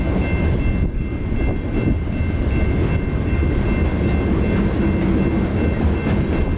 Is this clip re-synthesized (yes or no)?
no